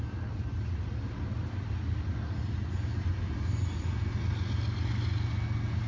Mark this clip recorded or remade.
recorded